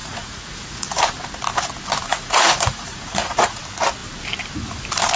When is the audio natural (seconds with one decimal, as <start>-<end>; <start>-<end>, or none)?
1.0-2.1; 3.6-5.2